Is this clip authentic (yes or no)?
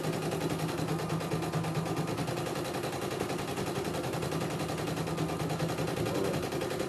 yes